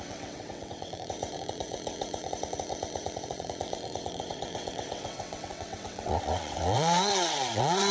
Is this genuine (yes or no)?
no